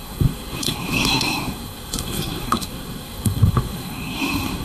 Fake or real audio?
fake